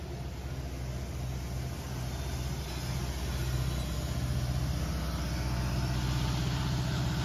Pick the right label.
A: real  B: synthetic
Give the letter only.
A